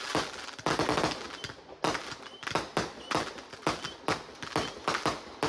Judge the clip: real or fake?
real